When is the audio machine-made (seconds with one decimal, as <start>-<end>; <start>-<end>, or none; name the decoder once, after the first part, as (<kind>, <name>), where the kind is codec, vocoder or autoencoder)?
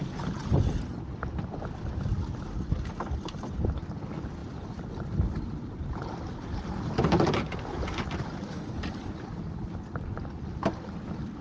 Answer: none